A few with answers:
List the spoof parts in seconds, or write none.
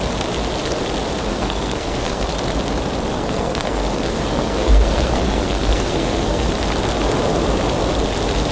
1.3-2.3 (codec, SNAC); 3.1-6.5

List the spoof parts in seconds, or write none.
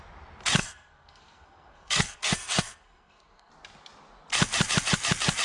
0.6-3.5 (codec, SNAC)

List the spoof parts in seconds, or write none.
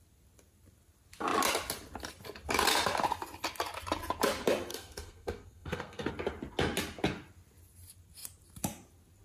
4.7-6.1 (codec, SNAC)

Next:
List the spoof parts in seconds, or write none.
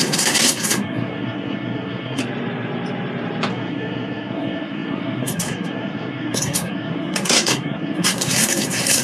0.0-2.2 (codec, SNAC); 3.5-9.0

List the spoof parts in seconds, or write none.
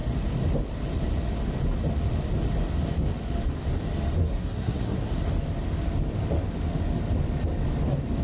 4.2-5.1 (codec, SNAC)